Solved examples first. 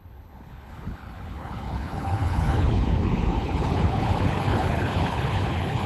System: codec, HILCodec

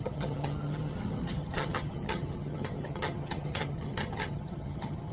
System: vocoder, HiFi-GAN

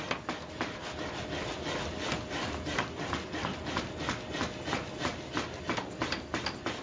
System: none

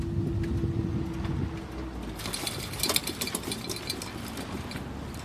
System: none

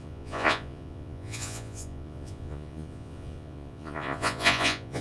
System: vocoder, Vocos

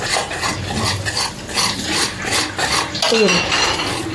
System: none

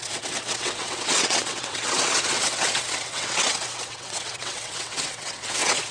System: vocoder, WaveNeXt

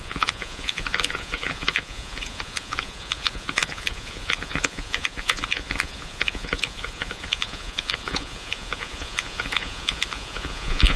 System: vocoder, Vocos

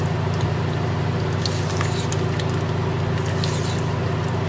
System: none